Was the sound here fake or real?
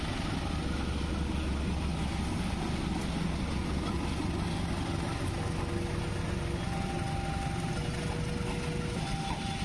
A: real